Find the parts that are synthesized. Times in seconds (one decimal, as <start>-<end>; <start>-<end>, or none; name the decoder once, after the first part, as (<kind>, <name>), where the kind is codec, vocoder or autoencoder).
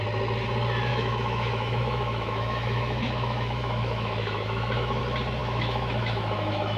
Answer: 0.9-5.0 (autoencoder, DAC-VAE); 5.4-6.8